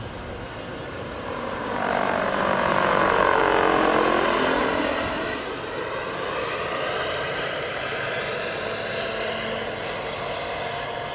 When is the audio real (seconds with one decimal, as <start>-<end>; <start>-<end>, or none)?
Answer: 0.0-0.8; 3.4-4.6; 7.9-11.1